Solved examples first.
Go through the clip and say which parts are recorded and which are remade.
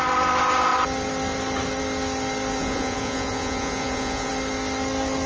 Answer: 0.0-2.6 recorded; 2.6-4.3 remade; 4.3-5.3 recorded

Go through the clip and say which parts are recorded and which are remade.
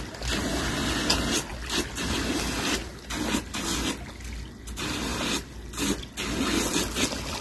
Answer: 0.0-7.4 recorded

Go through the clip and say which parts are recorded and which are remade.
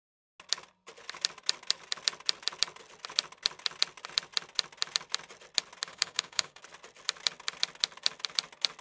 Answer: 0.0-5.9 recorded; 5.9-6.6 remade; 6.6-8.8 recorded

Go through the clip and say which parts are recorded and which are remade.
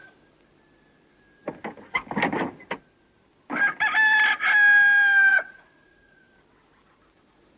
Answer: 0.0-5.3 recorded; 5.3-6.2 remade; 6.2-7.6 recorded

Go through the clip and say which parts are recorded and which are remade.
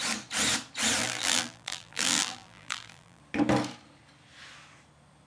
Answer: 0.0-1.0 recorded; 1.0-3.2 remade; 3.2-5.3 recorded